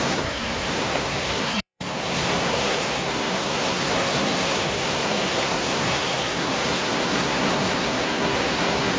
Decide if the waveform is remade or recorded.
remade